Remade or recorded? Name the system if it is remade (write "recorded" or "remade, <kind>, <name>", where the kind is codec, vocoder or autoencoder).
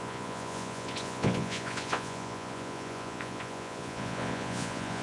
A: remade, vocoder, Vocos